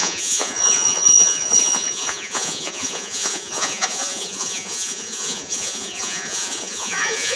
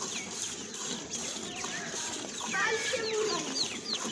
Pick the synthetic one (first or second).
first